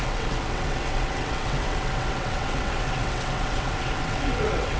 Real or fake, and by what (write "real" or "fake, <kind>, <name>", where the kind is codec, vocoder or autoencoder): fake, vocoder, WaveNeXt